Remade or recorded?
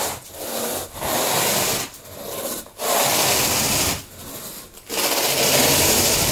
recorded